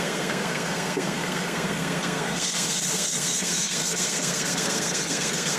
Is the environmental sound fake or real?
fake